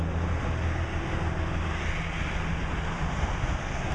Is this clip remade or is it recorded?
recorded